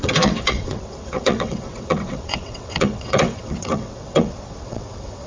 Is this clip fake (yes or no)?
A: yes